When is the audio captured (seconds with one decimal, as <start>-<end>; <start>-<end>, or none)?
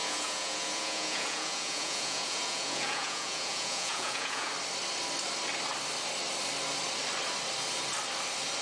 4.5-8.6